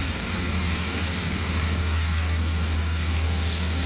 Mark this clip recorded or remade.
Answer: remade